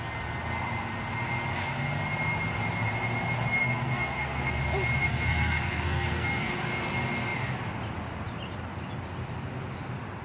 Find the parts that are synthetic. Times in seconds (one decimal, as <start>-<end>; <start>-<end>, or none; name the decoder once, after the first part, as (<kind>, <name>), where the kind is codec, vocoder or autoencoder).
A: 3.6-4.6 (codec, SNAC); 5.0-6.5